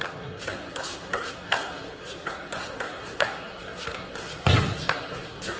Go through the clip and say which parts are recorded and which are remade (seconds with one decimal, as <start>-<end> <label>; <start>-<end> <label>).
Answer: 0.0-5.6 remade